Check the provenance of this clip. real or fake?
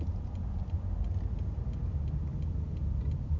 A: real